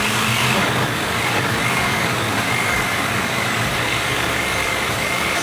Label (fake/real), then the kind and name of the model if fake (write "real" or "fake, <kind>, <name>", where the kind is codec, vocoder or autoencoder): fake, codec, DAC